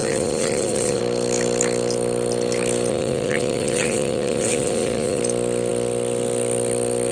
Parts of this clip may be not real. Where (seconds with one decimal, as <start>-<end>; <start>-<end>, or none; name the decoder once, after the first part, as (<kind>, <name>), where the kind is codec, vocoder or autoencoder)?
0.0-1.0 (vocoder, Vocos); 2.9-5.2